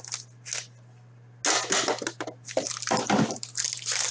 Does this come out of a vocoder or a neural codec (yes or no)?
no